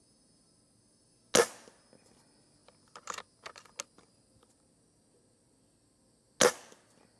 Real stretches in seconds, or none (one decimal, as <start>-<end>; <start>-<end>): 0.0-7.2